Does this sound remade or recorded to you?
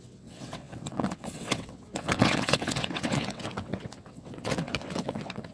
remade